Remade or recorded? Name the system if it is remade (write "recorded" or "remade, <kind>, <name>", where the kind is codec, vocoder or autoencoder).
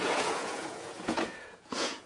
remade, vocoder, Vocos